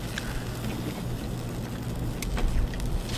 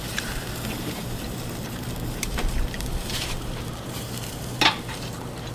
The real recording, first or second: first